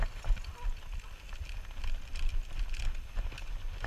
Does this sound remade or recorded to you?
recorded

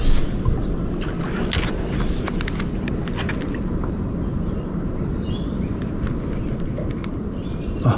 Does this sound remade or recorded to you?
recorded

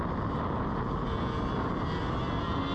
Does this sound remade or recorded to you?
recorded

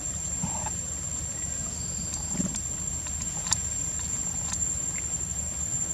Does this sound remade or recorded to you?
remade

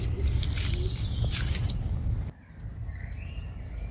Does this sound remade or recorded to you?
recorded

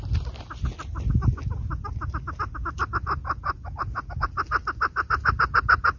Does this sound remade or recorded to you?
recorded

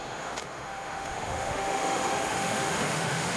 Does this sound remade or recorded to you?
remade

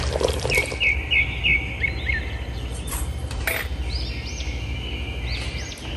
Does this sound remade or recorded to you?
recorded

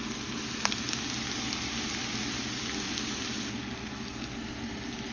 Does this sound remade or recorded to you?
recorded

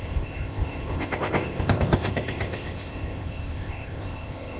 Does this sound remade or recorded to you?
remade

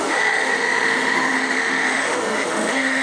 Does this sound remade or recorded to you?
remade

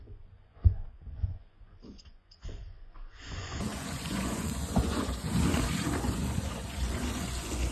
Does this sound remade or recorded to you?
remade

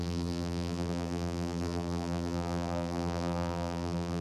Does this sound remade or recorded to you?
remade